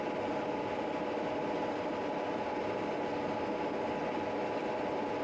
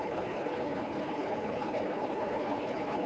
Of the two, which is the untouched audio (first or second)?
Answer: first